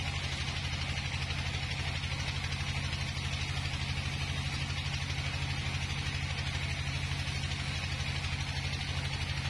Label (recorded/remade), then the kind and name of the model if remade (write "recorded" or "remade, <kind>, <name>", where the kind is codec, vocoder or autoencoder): recorded